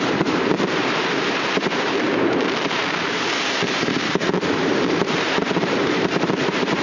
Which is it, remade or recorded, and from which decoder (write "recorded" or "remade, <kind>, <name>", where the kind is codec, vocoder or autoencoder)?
remade, vocoder, BigVGAN v2